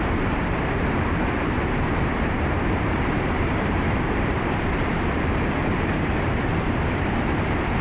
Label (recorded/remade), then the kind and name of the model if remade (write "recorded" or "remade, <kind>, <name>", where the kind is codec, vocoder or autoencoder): remade, vocoder, BigVGAN v2